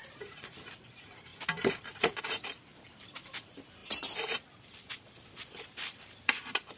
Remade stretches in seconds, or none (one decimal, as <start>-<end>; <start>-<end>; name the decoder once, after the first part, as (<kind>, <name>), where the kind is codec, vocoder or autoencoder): 0.0-1.3 (vocoder, BigVGAN v2); 2.2-2.7; 3.4-6.8